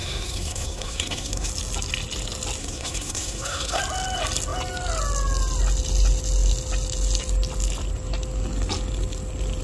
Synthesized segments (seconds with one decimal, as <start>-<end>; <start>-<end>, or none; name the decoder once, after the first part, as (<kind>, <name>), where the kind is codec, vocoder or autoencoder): 0.0-1.5 (codec, SNAC); 2.6-3.8